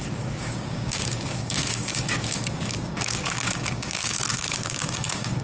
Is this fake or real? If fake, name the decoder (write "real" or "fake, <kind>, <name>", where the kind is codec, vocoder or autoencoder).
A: fake, codec, DAC